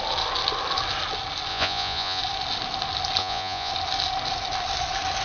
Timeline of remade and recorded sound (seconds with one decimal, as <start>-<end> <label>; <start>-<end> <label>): 0.0-1.5 recorded; 1.5-2.2 remade; 2.2-3.2 recorded; 3.2-3.7 remade; 3.7-5.2 recorded